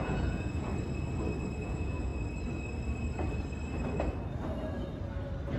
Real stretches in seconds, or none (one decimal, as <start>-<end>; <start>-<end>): 0.7-1.6; 2.1-5.6